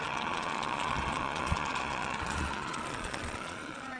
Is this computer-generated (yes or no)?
yes